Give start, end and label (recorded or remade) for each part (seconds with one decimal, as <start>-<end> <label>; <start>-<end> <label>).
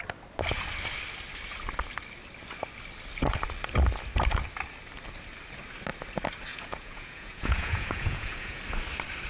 0.0-6.5 recorded; 6.5-8.6 remade; 8.6-9.3 recorded